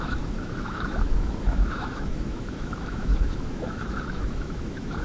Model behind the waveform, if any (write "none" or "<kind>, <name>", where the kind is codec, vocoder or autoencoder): autoencoder, DAC-VAE